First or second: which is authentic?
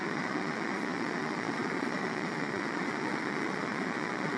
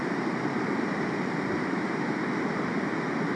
second